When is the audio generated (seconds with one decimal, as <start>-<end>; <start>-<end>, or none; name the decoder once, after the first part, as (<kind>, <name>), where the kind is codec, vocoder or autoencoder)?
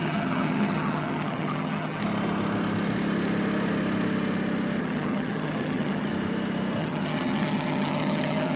0.0-2.0 (vocoder, HiFi-GAN); 4.8-6.1; 6.8-8.6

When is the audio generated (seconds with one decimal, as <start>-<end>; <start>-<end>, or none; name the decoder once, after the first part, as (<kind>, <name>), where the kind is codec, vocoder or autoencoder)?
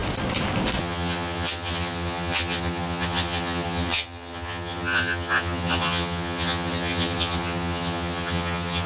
0.8-8.9 (vocoder, HiFi-GAN)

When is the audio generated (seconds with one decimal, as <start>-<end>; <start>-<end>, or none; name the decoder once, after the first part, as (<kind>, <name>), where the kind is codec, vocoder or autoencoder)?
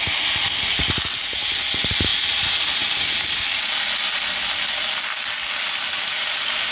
none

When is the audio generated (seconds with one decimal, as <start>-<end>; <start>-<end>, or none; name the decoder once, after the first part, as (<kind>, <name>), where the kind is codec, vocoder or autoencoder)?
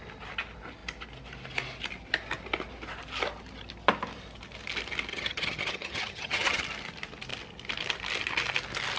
5.1-6.6 (vocoder, HiFi-GAN)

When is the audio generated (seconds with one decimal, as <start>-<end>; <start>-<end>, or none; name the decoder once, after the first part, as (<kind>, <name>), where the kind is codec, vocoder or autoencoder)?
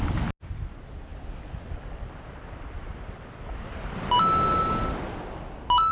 none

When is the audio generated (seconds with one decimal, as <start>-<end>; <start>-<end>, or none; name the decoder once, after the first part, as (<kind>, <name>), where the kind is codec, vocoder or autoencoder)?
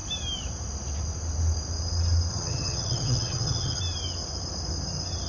2.3-3.8 (vocoder, HiFi-GAN)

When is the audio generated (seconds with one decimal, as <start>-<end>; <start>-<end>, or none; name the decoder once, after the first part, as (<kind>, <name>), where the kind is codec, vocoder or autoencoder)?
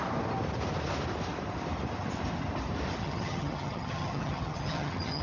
3.0-5.2 (vocoder, HiFi-GAN)